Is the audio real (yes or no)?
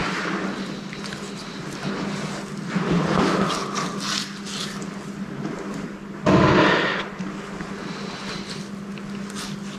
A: yes